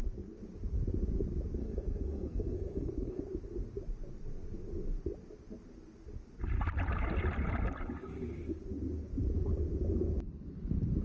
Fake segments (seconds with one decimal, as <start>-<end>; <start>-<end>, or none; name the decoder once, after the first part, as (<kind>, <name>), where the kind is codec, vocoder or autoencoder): 1.6-3.2 (codec, SNAC)